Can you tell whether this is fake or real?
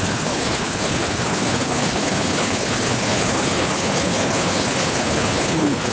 fake